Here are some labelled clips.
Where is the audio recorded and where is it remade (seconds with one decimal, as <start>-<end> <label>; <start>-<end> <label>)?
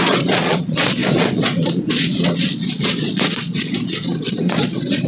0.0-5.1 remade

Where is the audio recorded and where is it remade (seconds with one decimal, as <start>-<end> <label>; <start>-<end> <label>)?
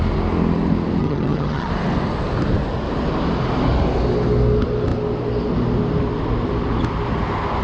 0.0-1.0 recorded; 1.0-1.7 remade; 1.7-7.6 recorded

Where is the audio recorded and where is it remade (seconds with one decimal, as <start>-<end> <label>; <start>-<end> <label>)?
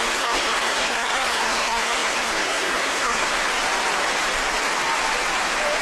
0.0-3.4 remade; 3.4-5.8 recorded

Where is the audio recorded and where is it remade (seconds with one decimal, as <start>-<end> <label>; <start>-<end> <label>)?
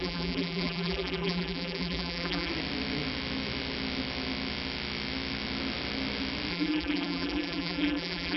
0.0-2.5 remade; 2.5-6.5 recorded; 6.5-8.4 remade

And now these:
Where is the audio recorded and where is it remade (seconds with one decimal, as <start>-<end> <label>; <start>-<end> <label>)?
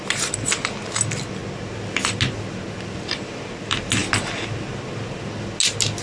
0.0-6.0 recorded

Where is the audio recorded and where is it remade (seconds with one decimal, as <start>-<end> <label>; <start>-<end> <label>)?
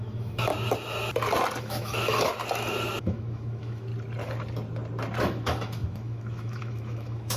0.0-0.5 remade; 0.5-1.6 recorded; 1.6-2.3 remade; 2.3-3.0 recorded; 3.0-3.9 remade; 3.9-5.2 recorded; 5.2-7.4 remade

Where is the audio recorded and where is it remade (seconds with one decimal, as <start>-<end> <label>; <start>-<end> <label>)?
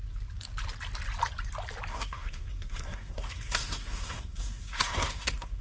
0.0-1.9 recorded; 1.9-5.6 remade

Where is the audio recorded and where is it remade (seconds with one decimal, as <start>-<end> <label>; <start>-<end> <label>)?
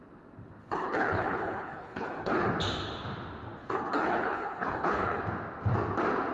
0.0-0.6 recorded; 0.6-2.5 remade; 2.5-3.6 recorded; 3.6-5.2 remade; 5.2-6.3 recorded